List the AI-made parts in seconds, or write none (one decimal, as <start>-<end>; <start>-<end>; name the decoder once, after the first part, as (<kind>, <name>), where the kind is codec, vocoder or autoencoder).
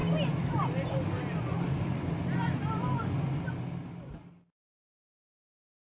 none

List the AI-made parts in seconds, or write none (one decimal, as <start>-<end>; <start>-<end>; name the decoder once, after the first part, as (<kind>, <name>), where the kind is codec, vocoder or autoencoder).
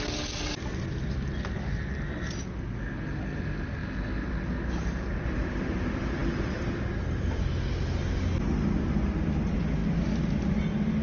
none